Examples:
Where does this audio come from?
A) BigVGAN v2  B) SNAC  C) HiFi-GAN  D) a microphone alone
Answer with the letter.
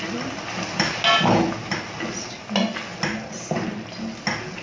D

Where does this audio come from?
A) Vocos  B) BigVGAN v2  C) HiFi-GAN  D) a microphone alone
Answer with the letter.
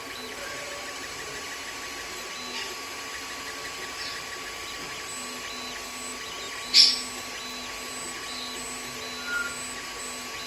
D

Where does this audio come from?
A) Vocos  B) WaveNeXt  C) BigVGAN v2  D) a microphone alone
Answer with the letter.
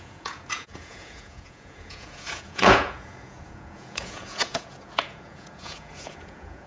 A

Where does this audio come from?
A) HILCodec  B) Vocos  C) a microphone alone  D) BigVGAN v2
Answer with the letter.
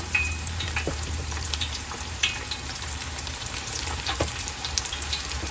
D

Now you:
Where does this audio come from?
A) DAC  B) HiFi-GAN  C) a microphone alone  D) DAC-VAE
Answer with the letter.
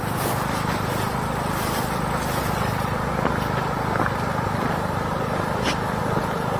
C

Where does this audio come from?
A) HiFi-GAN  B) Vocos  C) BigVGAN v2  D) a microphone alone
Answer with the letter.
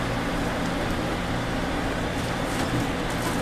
D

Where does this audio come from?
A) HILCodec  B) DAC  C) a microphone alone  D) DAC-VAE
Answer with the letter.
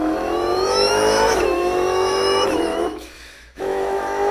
D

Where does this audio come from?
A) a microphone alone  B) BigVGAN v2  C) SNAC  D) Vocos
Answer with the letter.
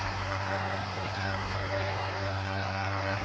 C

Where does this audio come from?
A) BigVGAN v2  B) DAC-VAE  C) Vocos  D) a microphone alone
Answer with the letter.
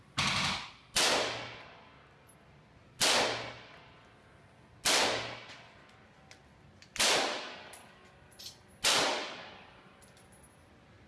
D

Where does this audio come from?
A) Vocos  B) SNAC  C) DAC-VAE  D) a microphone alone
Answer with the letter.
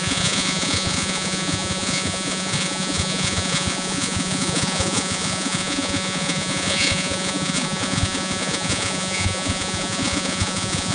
A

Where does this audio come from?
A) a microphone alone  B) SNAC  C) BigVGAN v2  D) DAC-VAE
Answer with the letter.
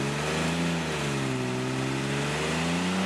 A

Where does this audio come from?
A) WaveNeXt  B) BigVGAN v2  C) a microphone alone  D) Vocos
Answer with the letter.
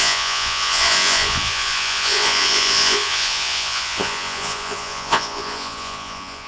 D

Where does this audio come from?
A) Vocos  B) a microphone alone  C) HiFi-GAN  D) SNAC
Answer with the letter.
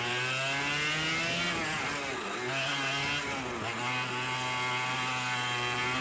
B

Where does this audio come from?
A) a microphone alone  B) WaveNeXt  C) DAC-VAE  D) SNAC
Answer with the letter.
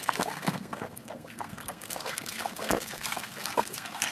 D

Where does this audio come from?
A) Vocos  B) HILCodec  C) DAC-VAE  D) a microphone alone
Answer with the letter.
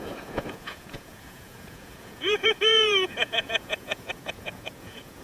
A